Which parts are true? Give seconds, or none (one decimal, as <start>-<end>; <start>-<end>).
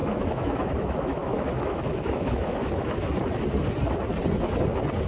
3.1-5.1